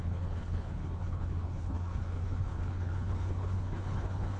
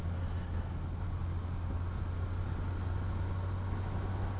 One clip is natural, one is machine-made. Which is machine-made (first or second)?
first